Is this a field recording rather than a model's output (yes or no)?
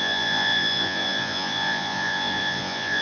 no